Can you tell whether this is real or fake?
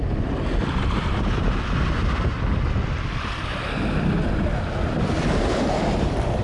fake